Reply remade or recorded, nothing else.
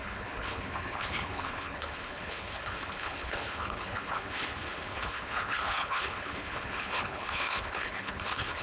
remade